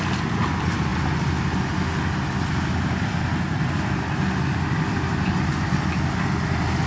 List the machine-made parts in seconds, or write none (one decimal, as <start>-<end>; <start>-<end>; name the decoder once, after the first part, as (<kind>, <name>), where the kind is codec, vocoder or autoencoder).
none